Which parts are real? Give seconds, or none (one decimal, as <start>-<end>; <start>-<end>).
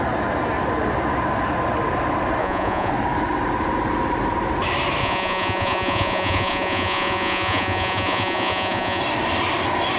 0.0-2.4; 2.9-5.0; 9.0-10.0